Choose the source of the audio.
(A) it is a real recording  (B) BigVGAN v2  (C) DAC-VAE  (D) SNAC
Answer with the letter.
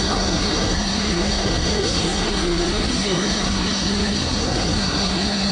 D